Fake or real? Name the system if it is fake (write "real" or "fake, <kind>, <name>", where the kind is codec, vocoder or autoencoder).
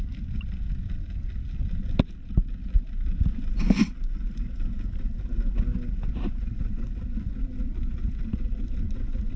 real